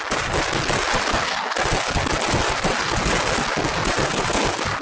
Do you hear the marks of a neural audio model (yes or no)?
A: no